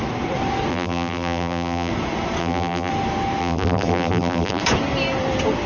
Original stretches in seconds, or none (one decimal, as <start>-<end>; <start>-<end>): 0.0-0.7; 1.9-2.4; 2.9-3.4; 4.6-5.7